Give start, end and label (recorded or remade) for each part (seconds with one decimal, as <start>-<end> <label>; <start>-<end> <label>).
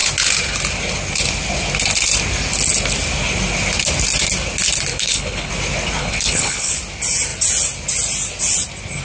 0.0-4.9 recorded; 4.9-5.5 remade; 5.5-6.0 recorded; 6.0-6.7 remade; 6.7-9.0 recorded